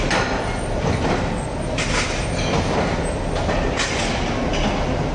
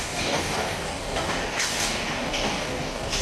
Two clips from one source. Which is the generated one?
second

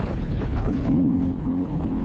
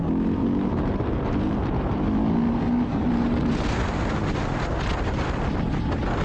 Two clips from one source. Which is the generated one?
first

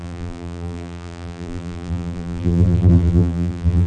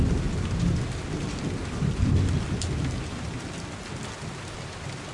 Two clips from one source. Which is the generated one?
first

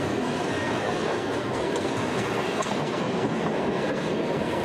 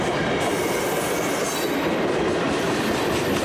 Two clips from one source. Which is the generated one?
first